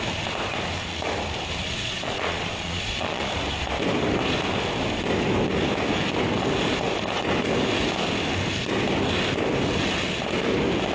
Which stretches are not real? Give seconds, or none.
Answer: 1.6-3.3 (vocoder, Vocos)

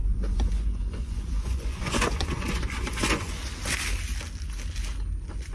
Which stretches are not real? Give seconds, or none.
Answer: 0.0-3.3 (vocoder, Vocos)

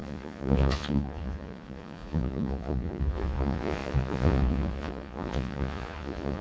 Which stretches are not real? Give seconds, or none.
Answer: 0.0-6.4 (vocoder, Vocos)

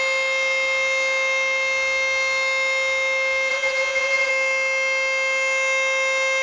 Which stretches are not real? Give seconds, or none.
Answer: 3.5-4.3 (vocoder, Vocos)

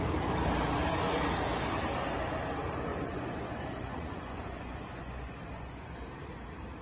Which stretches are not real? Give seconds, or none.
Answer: 2.9-6.1 (vocoder, Vocos)

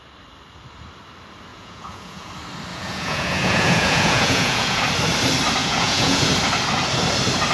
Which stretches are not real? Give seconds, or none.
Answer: 1.5-2.3 (vocoder, Vocos); 2.7-4.8; 5.6-6.3

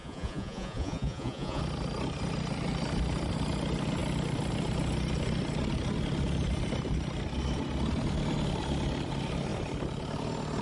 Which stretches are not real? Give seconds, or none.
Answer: 0.0-1.6 (vocoder, Vocos)

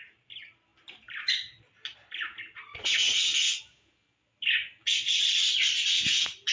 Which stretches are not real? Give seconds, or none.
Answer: none